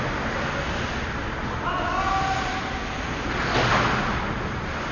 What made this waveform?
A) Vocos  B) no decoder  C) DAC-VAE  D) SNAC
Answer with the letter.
B